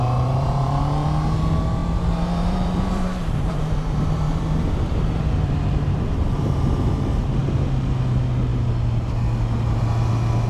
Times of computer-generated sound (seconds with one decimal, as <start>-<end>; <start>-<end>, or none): 0.0-0.8; 1.8-6.7